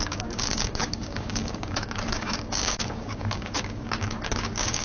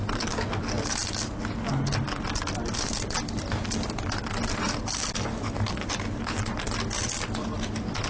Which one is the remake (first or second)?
first